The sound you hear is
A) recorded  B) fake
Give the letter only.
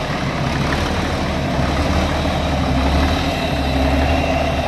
A